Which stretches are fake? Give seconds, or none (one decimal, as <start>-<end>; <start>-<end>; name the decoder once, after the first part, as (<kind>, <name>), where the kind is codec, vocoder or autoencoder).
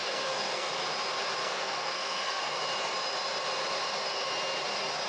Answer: 0.0-0.7 (codec, SNAC); 1.4-2.6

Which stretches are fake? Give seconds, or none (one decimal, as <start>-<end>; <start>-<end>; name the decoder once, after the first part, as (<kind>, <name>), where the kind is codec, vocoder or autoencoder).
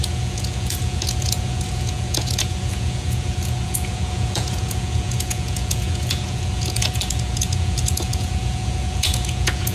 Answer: 0.0-9.7 (vocoder, Vocos)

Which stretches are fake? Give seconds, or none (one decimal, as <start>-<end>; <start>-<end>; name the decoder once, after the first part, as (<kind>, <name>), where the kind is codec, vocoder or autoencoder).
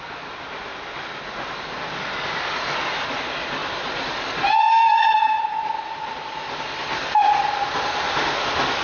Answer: 4.7-5.4 (codec, SNAC)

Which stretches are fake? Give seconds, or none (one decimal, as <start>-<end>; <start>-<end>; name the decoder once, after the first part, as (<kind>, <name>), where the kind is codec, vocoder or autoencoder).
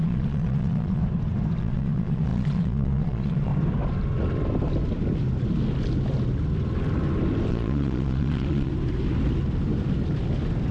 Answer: 0.0-1.0 (vocoder, Vocos); 1.6-3.5; 7.5-8.7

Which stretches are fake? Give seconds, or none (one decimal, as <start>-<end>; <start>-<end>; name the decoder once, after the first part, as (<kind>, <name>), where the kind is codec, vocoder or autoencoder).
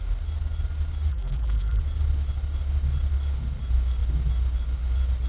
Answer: 1.1-1.8 (vocoder, BigVGAN v2)